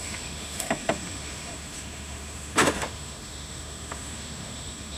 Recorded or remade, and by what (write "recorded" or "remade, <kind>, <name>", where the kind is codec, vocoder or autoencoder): remade, autoencoder, DAC-VAE